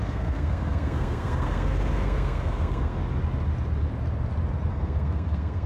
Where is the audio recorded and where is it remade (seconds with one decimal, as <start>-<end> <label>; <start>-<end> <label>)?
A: 0.0-3.0 remade; 3.0-4.7 recorded; 4.7-5.7 remade